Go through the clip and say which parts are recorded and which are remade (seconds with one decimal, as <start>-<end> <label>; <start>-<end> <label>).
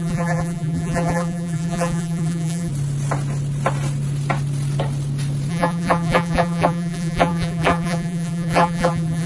0.0-2.7 remade; 2.7-5.5 recorded; 5.5-9.3 remade